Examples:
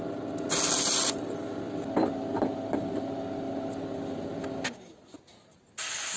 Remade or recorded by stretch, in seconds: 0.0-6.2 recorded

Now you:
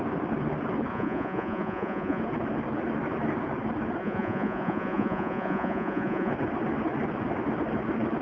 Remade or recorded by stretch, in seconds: 0.0-0.9 recorded; 0.9-2.2 remade; 2.2-4.0 recorded; 4.0-6.3 remade; 6.3-8.2 recorded

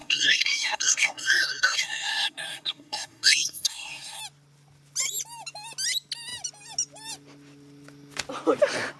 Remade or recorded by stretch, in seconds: 0.0-4.2 remade; 4.2-9.0 recorded

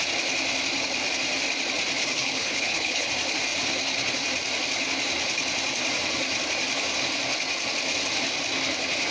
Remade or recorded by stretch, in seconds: 0.0-2.0 recorded; 2.0-3.1 remade; 3.1-9.1 recorded